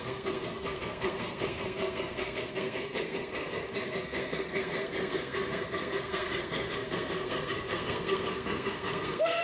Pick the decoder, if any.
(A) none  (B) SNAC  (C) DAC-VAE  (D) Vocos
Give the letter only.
B